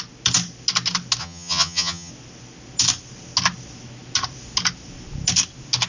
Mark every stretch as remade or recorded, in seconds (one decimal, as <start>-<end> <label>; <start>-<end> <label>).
0.0-1.2 recorded; 1.2-2.1 remade; 2.1-5.9 recorded